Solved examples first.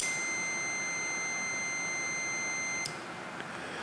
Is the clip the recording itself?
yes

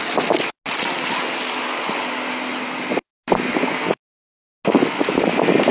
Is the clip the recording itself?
yes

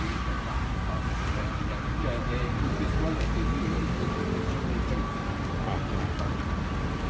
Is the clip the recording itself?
yes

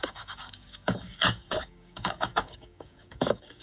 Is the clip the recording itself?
no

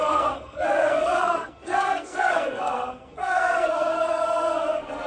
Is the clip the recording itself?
no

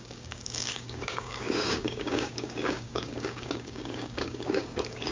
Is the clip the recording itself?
no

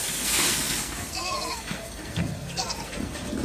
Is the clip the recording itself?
no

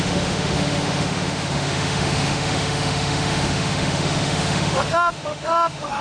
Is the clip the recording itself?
no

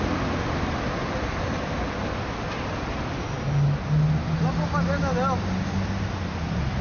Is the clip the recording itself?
yes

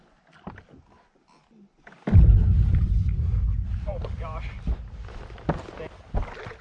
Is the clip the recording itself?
yes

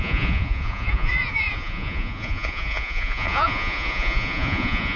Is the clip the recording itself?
no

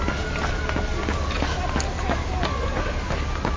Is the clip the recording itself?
yes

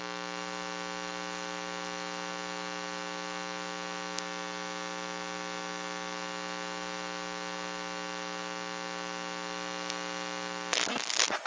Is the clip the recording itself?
yes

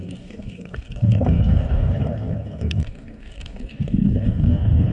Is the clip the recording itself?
no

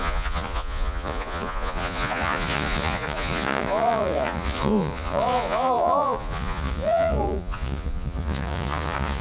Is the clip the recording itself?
no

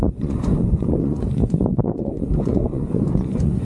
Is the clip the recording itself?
no